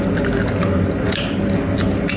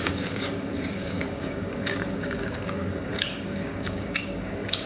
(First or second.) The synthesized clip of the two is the second